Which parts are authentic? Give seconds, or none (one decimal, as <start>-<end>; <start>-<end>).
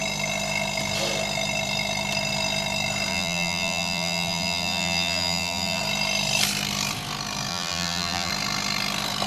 0.0-3.1; 5.8-7.5; 8.3-9.3